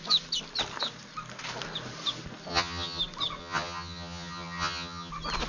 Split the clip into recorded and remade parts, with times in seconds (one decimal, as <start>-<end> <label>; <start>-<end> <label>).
0.0-2.5 recorded; 2.5-3.0 remade; 3.0-3.4 recorded; 3.4-5.1 remade; 5.1-5.5 recorded